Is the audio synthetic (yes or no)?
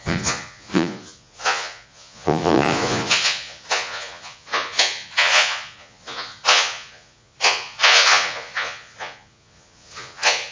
yes